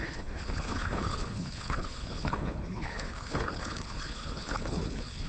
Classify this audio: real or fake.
fake